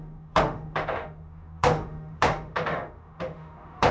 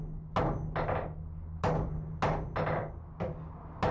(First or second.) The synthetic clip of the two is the first